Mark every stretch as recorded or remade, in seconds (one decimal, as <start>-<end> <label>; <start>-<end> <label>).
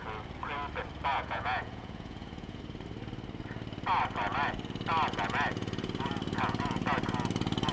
0.0-1.1 recorded; 1.1-2.6 remade; 2.6-7.7 recorded